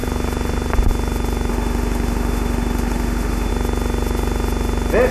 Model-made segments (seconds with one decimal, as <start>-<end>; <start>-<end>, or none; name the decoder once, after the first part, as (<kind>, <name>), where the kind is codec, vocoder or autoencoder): 1.5-3.5 (autoencoder, DAC-VAE)